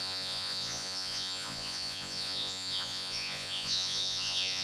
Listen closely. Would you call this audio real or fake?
fake